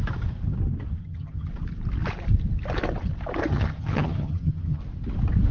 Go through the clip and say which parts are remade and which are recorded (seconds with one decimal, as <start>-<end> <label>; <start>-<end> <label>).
0.0-1.0 recorded; 1.0-1.5 remade; 1.5-3.5 recorded; 3.5-4.8 remade; 4.8-5.5 recorded